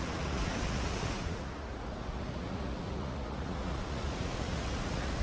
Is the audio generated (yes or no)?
yes